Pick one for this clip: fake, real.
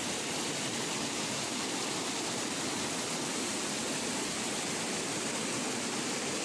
real